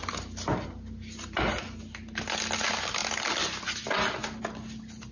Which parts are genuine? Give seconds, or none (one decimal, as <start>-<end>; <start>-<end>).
0.0-5.1